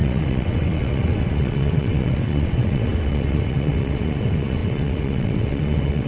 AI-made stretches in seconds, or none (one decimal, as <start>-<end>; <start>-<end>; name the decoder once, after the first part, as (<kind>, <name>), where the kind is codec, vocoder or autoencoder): 0.0-6.1 (vocoder, WaveNeXt)